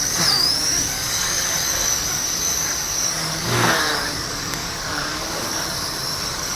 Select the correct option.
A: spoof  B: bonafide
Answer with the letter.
A